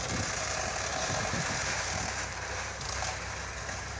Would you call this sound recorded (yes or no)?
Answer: no